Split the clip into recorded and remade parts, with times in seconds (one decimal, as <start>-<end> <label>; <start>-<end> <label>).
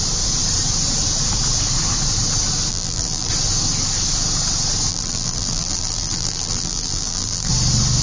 0.0-2.7 recorded; 2.7-3.3 remade; 3.3-4.9 recorded; 4.9-7.5 remade; 7.5-8.0 recorded